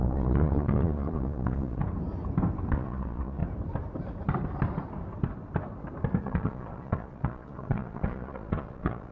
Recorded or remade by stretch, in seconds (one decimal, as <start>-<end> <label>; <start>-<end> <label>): 0.0-1.8 remade; 1.8-2.7 recorded; 2.7-3.4 remade; 3.4-6.2 recorded; 6.2-9.1 remade

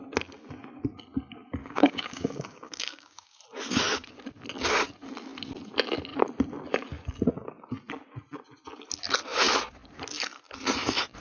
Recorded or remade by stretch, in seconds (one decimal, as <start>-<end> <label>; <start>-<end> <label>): 0.0-1.6 recorded; 1.6-3.4 remade; 3.4-11.2 recorded

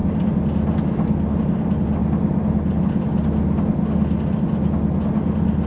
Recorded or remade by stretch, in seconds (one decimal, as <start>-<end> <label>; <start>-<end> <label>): 0.0-5.7 recorded

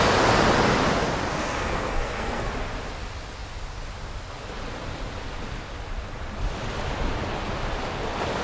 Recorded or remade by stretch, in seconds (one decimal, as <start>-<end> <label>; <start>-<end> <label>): 0.0-1.4 recorded; 1.4-2.5 remade; 2.5-8.4 recorded